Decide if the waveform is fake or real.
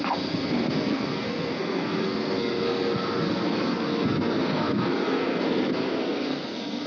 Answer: fake